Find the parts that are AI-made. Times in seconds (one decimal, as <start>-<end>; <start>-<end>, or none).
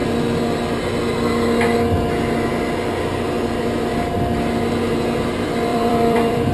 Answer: 5.7-6.5